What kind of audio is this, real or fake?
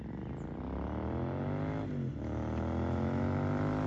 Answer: real